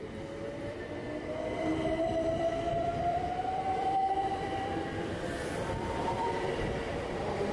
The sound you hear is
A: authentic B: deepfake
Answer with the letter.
B